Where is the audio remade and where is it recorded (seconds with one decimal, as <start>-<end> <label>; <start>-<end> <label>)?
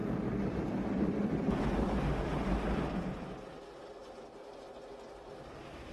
0.0-2.0 remade; 2.0-5.9 recorded